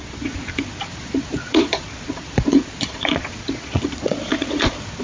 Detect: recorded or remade remade